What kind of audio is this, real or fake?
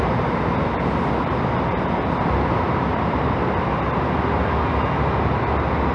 real